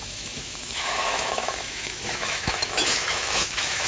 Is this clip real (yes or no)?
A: no